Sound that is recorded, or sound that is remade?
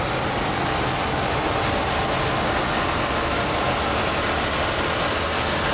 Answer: recorded